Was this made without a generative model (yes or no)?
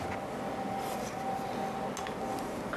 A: yes